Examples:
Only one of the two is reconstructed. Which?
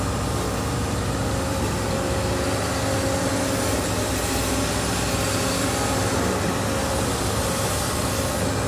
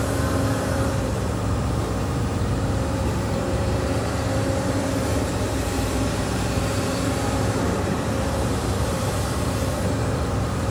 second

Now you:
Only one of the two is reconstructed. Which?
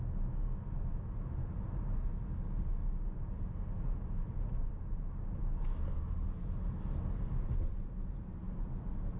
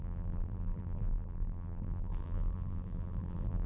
second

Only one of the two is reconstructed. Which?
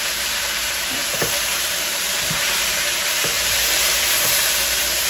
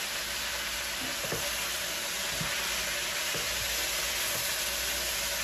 first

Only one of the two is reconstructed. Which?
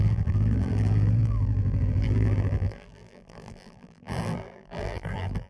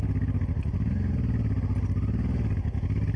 first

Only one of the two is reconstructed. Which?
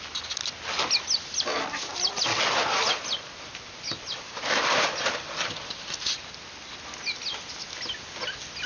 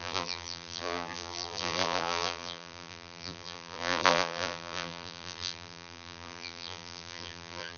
second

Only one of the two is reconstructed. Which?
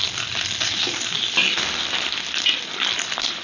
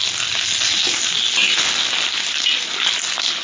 first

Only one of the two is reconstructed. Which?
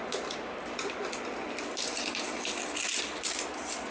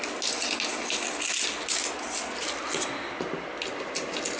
first